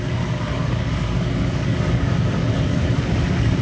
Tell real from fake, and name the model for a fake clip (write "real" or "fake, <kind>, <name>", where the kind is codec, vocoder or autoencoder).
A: fake, codec, DAC